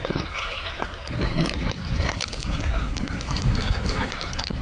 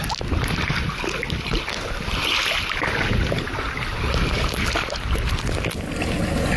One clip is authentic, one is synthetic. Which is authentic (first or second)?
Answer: second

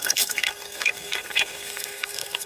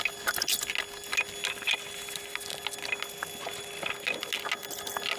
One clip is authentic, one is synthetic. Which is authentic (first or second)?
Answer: second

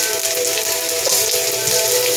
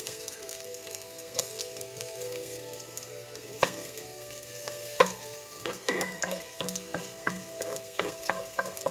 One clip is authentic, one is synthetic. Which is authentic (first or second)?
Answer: first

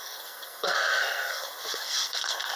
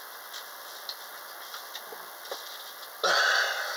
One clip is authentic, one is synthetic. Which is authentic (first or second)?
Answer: second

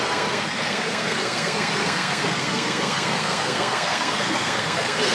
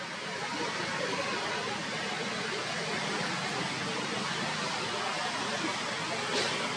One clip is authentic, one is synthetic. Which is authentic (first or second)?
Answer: second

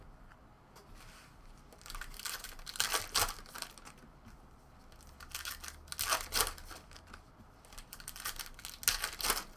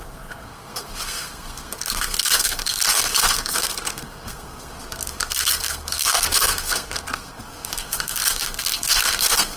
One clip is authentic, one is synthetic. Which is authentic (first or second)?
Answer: first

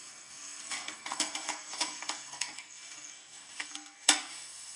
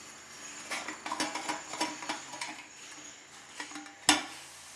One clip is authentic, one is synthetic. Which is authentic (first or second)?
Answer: second